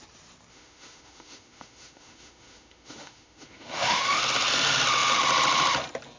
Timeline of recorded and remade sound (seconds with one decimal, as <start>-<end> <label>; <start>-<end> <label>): 0.0-0.5 recorded; 0.5-4.2 remade; 4.2-6.2 recorded

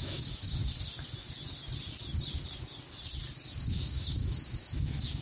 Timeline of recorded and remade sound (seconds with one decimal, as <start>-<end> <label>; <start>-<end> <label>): 0.0-0.6 remade; 0.6-3.7 recorded; 3.7-5.2 remade

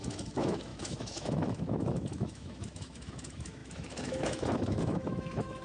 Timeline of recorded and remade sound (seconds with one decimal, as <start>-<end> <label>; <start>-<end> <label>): 0.0-5.6 remade

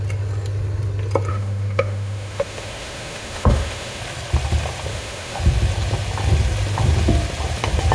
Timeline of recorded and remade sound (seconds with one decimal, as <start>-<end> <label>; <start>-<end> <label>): 0.0-1.3 recorded; 1.3-4.0 remade; 4.0-4.9 recorded; 4.9-5.4 remade; 5.4-7.9 recorded

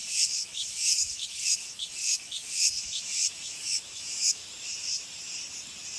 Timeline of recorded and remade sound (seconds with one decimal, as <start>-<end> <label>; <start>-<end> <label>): 0.0-4.4 remade; 4.4-6.0 recorded

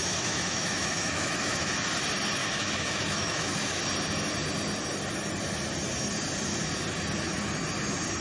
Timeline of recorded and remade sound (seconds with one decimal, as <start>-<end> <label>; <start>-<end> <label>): 0.0-1.7 remade; 1.7-2.4 recorded; 2.4-3.8 remade; 3.8-8.2 recorded

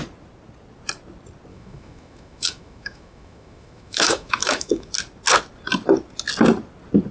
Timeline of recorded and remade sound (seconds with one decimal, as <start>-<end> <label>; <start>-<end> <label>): 0.0-1.5 recorded; 1.5-4.9 remade; 4.9-7.1 recorded